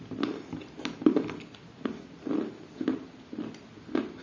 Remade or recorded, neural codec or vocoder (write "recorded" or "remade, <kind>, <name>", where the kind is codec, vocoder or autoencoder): recorded